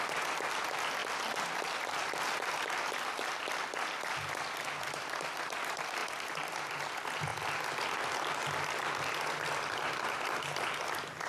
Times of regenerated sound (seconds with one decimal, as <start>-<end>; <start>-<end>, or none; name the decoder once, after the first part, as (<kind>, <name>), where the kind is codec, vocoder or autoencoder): none